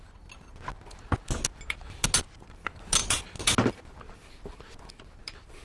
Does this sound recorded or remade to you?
recorded